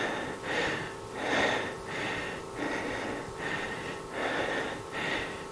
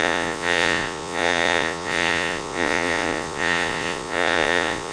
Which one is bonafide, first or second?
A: first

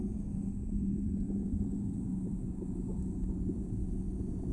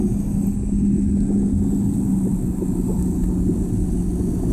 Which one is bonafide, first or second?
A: second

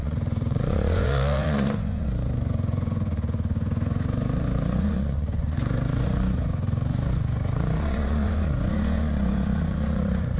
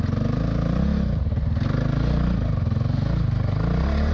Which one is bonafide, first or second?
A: second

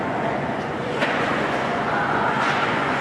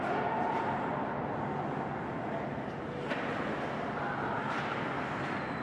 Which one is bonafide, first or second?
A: second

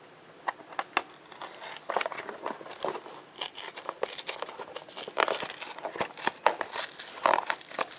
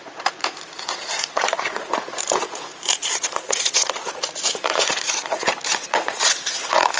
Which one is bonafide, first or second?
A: first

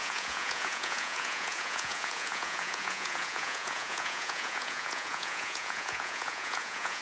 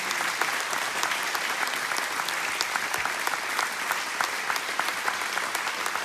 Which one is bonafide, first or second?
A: second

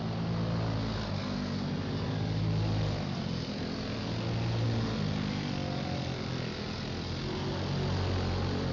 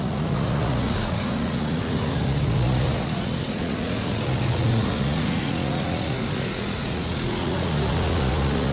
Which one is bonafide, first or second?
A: first